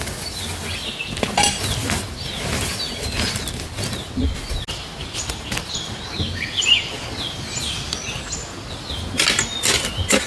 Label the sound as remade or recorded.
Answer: recorded